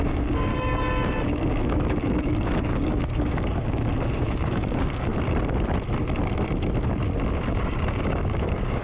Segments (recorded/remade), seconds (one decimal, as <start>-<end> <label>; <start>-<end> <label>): 0.0-0.5 remade; 0.5-1.5 recorded; 1.5-5.1 remade; 5.1-7.5 recorded; 7.5-8.8 remade